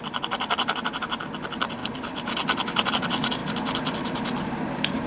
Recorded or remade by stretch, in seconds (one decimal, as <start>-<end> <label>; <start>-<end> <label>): 0.0-5.1 recorded